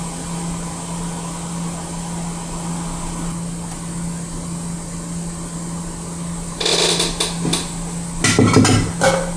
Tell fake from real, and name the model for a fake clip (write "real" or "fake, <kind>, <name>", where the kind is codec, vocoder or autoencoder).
real